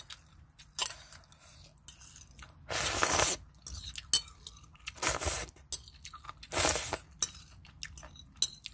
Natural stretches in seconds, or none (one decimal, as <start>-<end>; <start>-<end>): 0.0-8.7